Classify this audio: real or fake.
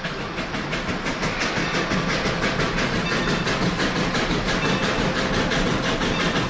real